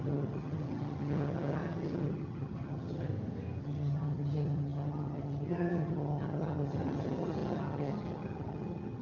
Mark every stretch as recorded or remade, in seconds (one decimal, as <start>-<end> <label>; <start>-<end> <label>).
0.0-3.1 remade; 3.1-3.6 recorded; 3.6-9.0 remade